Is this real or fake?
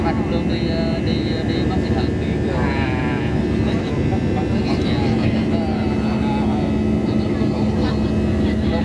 real